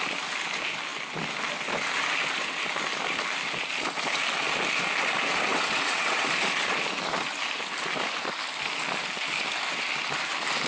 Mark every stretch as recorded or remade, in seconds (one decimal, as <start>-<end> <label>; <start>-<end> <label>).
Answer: 0.0-5.5 recorded; 5.5-6.3 remade; 6.3-10.7 recorded